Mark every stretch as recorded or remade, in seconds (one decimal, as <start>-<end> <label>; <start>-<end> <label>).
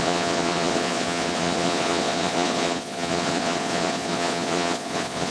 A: 0.0-5.3 remade